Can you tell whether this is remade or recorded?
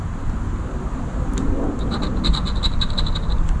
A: recorded